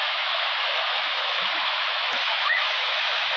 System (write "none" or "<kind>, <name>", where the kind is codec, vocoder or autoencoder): autoencoder, DAC-VAE